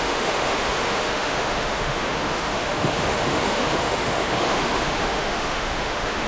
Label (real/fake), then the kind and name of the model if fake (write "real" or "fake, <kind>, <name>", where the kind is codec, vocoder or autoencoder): fake, autoencoder, DAC-VAE